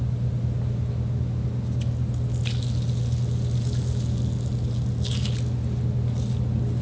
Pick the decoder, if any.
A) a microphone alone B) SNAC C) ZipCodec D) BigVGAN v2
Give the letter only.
A